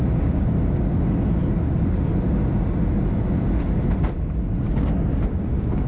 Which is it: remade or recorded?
recorded